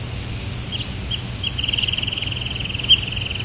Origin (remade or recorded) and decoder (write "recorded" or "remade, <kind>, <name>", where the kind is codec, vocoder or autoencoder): recorded